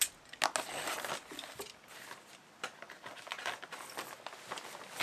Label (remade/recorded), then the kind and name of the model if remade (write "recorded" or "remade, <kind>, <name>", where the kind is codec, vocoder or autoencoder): recorded